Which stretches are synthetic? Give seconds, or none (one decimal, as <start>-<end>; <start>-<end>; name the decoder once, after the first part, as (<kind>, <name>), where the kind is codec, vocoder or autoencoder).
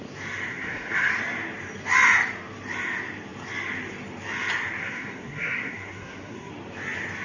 0.5-1.1 (codec, SNAC); 4.8-6.5